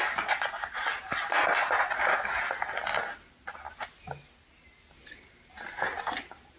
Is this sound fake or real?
real